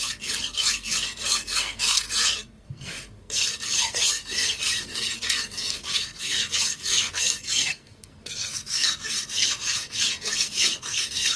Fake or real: fake